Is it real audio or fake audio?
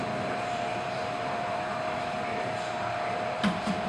fake